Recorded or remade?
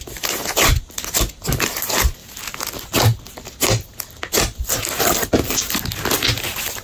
recorded